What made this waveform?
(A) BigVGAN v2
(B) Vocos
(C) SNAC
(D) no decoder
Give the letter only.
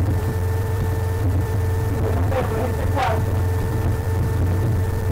A